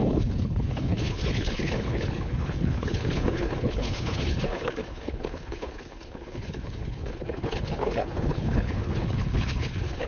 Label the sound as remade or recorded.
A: remade